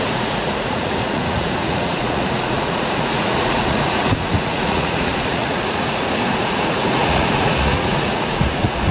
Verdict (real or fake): fake